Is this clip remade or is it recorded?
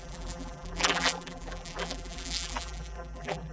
remade